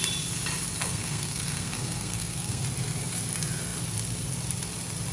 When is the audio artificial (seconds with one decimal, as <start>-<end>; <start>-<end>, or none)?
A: 0.8-2.6

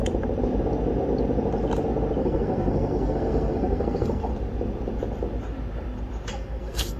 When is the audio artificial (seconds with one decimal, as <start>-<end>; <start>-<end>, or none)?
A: 2.2-4.3; 6.3-7.0

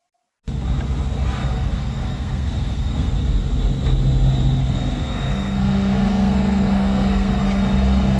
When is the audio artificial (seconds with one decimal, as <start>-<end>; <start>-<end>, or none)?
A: 1.4-3.1; 4.6-7.4

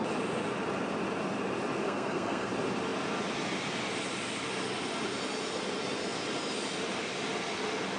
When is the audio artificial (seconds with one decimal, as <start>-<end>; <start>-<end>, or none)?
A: 1.8-2.5

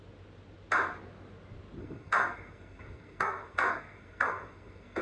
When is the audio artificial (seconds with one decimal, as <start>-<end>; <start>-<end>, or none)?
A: 1.8-5.0